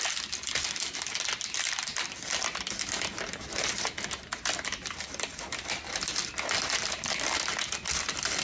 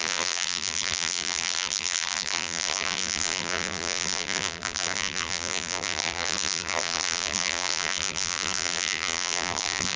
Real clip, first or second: first